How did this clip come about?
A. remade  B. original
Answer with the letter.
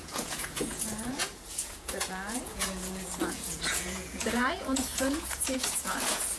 A